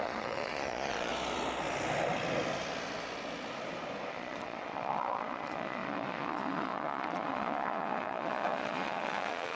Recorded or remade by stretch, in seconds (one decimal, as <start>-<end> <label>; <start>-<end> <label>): 0.0-1.1 remade; 1.1-4.1 recorded; 4.1-9.6 remade